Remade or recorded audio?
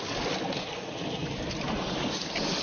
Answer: recorded